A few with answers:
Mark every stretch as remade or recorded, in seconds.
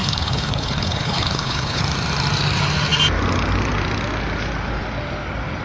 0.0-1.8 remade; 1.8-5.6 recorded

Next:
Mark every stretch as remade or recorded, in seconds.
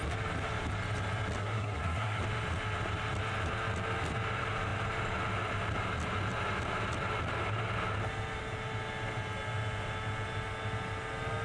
0.0-1.4 recorded; 1.4-2.2 remade; 2.2-11.4 recorded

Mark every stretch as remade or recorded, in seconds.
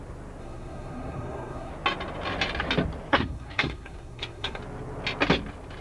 0.0-0.4 recorded; 0.4-1.7 remade; 1.7-3.1 recorded; 3.1-4.6 remade; 4.6-5.8 recorded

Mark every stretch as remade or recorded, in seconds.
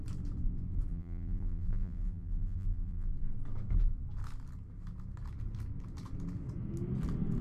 0.0-0.9 recorded; 0.9-3.1 remade; 3.1-7.4 recorded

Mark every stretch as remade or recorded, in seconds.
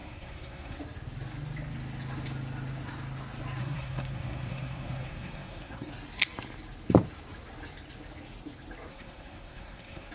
0.0-0.8 remade; 0.8-3.6 recorded; 3.6-5.9 remade; 5.9-8.9 recorded; 8.9-10.1 remade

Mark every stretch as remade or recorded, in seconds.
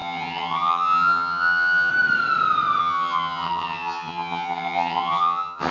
0.0-1.9 remade; 1.9-2.8 recorded; 2.8-5.7 remade